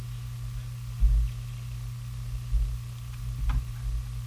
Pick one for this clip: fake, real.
real